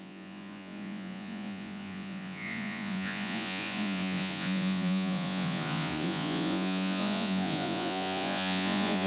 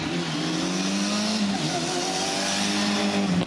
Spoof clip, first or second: first